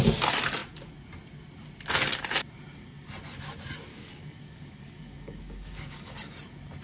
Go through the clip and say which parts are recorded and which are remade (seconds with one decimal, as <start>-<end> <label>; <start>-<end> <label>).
0.0-3.9 recorded; 3.9-6.1 remade; 6.1-6.8 recorded